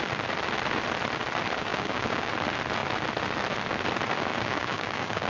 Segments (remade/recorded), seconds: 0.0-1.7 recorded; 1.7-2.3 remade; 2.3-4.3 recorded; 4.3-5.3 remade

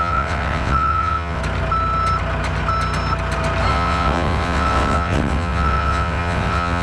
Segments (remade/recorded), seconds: 0.0-1.4 remade; 1.4-3.7 recorded; 3.7-6.8 remade

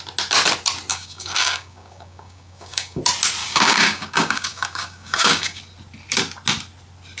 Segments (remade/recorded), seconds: 0.0-0.9 recorded; 0.9-3.0 remade; 3.0-3.4 recorded; 3.4-5.6 remade; 5.6-7.2 recorded

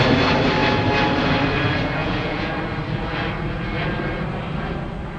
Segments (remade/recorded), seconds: 0.0-2.0 recorded; 2.0-2.5 remade; 2.5-5.2 recorded

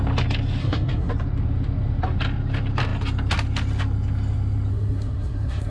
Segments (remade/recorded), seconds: 0.0-0.6 recorded; 0.6-1.1 remade; 1.1-4.7 recorded; 4.7-5.7 remade

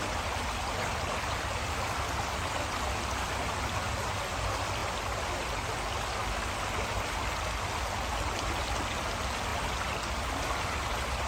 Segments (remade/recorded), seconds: 0.0-11.3 recorded

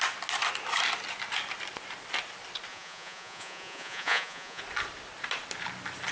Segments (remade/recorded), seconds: 0.0-2.7 recorded; 2.7-4.6 remade; 4.6-6.1 recorded

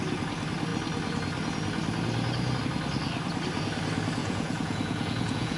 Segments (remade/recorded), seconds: 0.0-4.2 recorded; 4.2-5.6 remade